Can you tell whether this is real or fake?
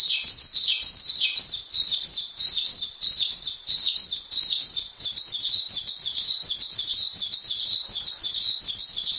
fake